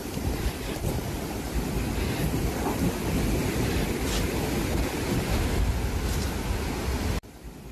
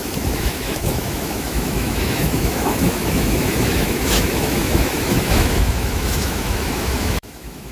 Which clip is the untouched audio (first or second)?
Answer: first